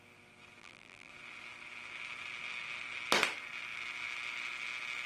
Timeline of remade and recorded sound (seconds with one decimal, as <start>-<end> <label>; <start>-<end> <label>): 0.0-0.6 recorded; 0.6-1.1 remade; 1.1-5.1 recorded

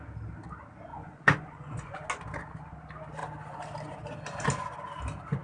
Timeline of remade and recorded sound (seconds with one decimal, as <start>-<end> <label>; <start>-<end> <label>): 0.0-0.9 recorded; 0.9-2.1 remade; 2.1-5.4 recorded

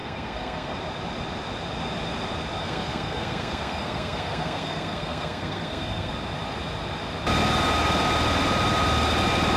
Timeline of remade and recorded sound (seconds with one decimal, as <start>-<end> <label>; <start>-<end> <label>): 0.0-0.8 remade; 0.8-2.6 recorded; 2.6-6.1 remade; 6.1-9.6 recorded

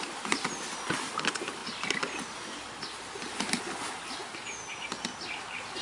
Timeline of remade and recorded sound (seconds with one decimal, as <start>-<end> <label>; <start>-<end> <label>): 0.0-5.8 recorded

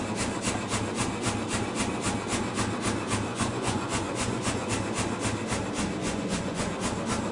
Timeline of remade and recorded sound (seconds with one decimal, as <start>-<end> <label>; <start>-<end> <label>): 0.0-3.3 recorded; 3.3-4.7 remade; 4.7-6.0 recorded; 6.0-6.7 remade; 6.7-7.3 recorded

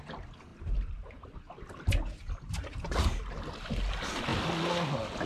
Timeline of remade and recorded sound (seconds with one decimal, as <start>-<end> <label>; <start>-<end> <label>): 0.0-5.3 recorded

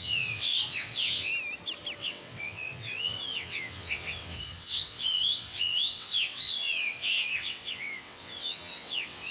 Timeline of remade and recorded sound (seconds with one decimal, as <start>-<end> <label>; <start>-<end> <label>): 0.0-1.3 remade; 1.3-2.0 recorded; 2.0-9.3 remade

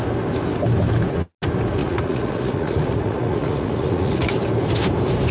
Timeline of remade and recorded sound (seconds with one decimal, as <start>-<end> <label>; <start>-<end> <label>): 0.0-1.8 recorded; 1.8-4.3 remade; 4.3-5.3 recorded